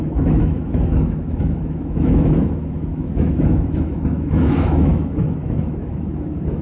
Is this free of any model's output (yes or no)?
no